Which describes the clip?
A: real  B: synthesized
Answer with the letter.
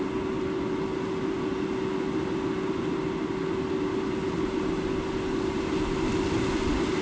A